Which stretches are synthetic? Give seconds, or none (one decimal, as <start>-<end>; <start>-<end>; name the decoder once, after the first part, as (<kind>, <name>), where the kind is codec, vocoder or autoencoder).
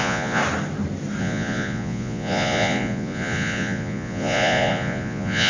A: 0.0-0.4 (vocoder, Vocos); 1.2-5.5